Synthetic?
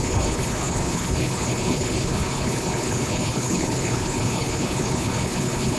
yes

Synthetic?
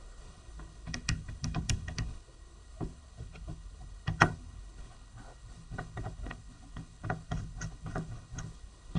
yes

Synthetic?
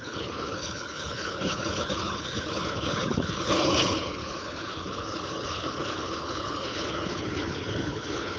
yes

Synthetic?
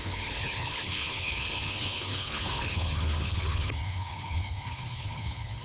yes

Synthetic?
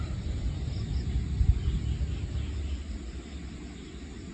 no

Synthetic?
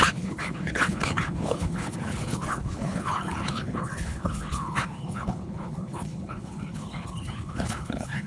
yes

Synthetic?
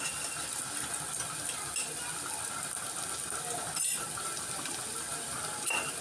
no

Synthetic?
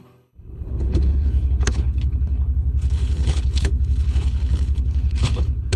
yes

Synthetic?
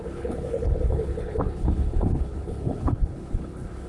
yes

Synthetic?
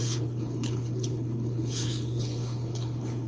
yes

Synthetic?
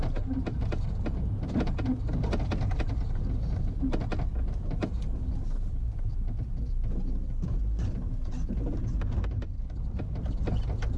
no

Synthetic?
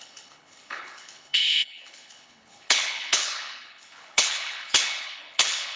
yes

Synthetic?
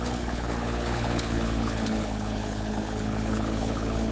yes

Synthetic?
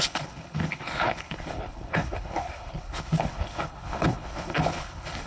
yes